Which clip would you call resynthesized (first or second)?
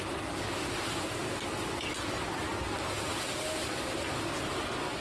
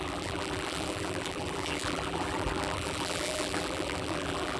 second